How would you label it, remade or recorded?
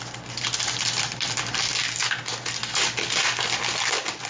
recorded